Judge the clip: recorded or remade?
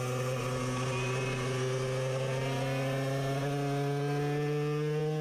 recorded